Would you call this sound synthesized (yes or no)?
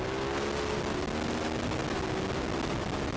no